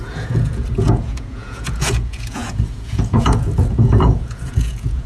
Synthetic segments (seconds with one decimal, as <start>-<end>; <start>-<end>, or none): 0.0-5.1